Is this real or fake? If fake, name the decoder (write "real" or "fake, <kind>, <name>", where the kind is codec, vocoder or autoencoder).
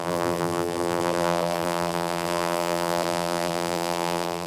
fake, vocoder, BigVGAN v2